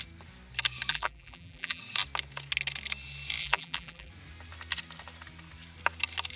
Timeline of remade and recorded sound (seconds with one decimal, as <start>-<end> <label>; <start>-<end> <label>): 0.0-0.9 recorded; 0.9-1.8 remade; 1.8-3.4 recorded; 3.4-4.1 remade; 4.1-6.4 recorded